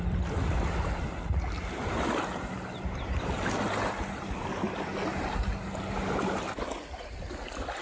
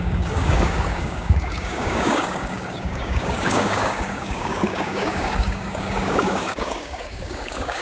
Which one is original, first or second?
first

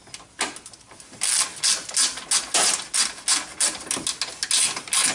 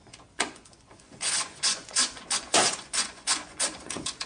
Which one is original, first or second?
first